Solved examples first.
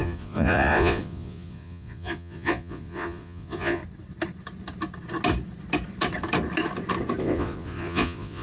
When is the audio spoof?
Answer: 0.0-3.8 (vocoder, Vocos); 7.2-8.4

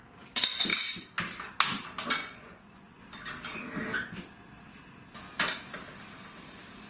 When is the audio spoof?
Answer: 2.2-3.0 (vocoder, Vocos)

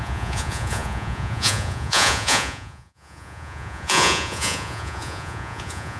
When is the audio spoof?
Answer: 0.0-6.0 (vocoder, Vocos)

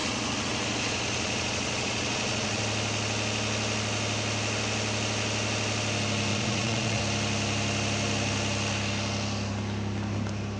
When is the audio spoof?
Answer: 0.0-2.6 (vocoder, Vocos); 6.3-7.0

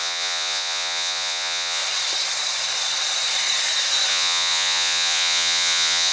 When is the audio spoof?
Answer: 0.0-1.8 (vocoder, Vocos); 4.1-6.1